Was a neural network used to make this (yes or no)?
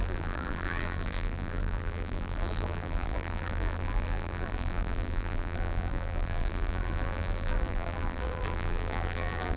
yes